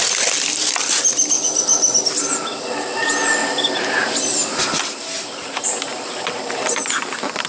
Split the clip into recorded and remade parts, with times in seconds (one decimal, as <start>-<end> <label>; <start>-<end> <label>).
0.0-3.4 recorded; 3.4-5.0 remade; 5.0-7.5 recorded